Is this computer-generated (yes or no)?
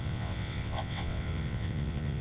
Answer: yes